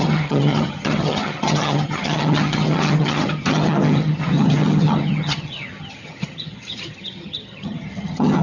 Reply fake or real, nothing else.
fake